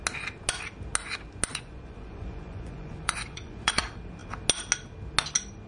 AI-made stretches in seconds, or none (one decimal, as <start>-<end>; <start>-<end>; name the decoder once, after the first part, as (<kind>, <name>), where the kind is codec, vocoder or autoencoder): 1.5-3.7 (vocoder, Vocos)